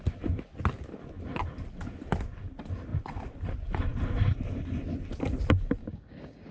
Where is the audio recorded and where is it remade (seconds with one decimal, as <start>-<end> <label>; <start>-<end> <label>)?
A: 0.0-5.8 recorded; 5.8-6.5 remade